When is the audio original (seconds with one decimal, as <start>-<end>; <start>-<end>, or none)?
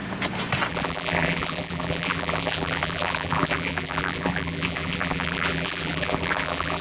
0.0-0.7